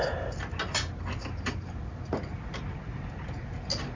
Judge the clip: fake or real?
real